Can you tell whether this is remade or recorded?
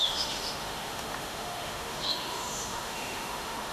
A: remade